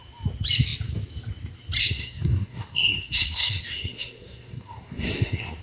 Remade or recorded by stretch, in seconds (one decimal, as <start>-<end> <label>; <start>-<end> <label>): 0.0-1.8 recorded; 1.8-5.6 remade